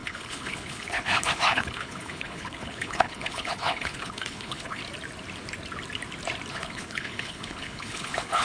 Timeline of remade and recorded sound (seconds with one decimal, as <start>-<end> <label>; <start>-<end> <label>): 0.0-4.8 remade; 4.8-6.5 recorded; 6.5-8.4 remade

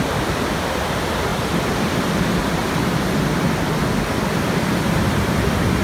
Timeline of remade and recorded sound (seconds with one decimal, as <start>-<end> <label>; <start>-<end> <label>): 0.0-5.8 recorded

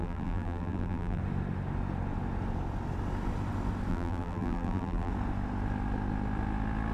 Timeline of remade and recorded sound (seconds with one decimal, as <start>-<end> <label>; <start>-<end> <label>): 0.0-1.2 remade; 1.2-3.9 recorded; 3.9-5.1 remade; 5.1-6.9 recorded

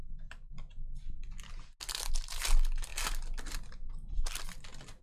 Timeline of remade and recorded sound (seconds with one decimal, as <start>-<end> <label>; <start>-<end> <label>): 0.0-5.0 recorded

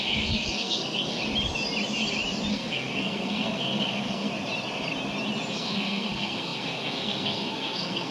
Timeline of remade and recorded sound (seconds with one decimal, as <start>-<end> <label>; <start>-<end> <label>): 0.0-1.2 remade; 1.2-2.5 recorded; 2.5-4.3 remade; 4.3-5.5 recorded; 5.5-8.1 remade